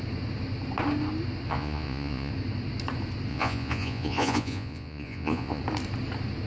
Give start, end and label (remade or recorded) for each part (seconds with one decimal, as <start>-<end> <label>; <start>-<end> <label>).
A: 0.0-1.5 recorded; 1.5-2.3 remade; 2.3-3.3 recorded; 3.3-5.6 remade; 5.6-6.5 recorded